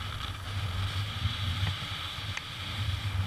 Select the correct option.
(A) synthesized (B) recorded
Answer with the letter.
B